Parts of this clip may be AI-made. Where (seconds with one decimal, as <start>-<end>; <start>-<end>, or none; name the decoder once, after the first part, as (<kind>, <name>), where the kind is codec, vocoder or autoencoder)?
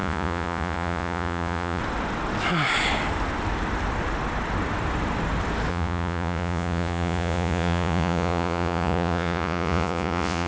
0.0-1.8 (vocoder, Vocos); 5.7-10.5